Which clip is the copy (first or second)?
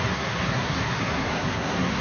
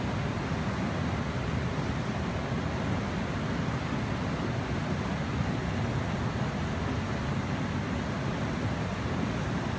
first